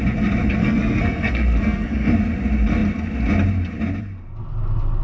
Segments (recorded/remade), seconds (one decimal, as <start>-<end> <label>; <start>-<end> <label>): 0.0-0.6 recorded; 0.6-2.1 remade; 2.1-5.0 recorded